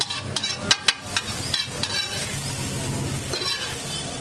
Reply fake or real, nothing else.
real